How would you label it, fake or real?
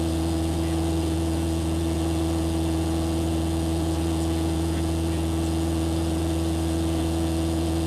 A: fake